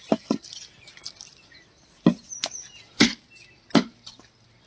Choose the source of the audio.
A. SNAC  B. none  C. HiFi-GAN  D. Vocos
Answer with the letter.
B